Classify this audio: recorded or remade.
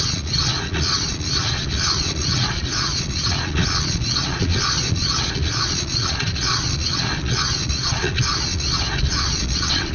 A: remade